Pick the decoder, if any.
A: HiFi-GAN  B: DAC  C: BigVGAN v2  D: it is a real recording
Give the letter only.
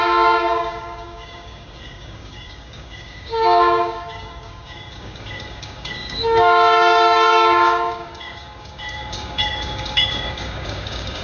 B